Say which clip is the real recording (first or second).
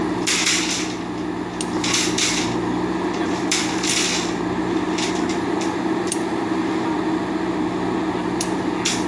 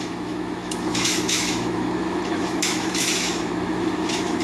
first